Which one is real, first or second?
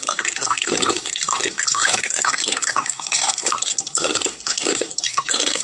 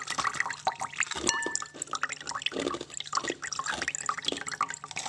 second